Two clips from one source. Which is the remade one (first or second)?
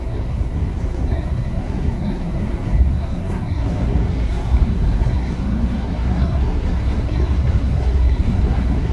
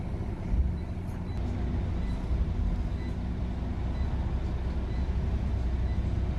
first